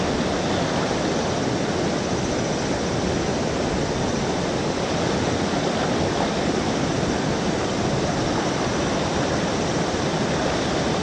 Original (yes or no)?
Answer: yes